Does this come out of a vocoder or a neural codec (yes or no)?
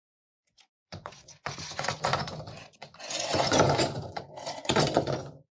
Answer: yes